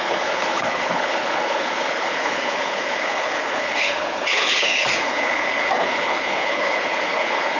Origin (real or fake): fake